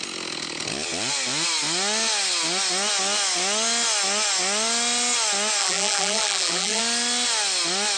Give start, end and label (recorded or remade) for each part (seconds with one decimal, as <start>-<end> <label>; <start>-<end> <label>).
0.0-5.6 recorded; 5.6-6.8 remade; 6.8-8.0 recorded